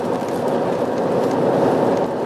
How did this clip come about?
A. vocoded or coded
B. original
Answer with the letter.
B